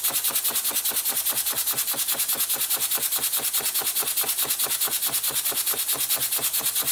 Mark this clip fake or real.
real